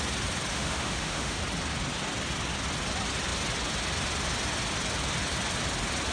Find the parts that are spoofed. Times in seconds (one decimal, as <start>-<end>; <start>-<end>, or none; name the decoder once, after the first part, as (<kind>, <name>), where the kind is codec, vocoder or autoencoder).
0.5-1.4 (autoencoder, DAC-VAE)